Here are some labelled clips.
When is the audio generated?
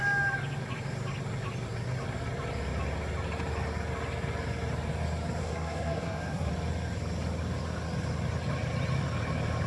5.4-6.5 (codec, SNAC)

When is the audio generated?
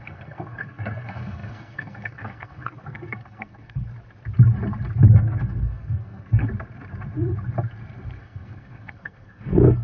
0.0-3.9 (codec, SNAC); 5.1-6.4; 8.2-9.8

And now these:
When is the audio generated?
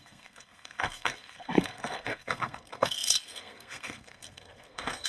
0.0-5.1 (codec, SNAC)